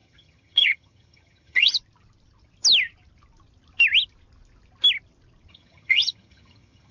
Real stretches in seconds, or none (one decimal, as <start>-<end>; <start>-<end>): 1.8-5.5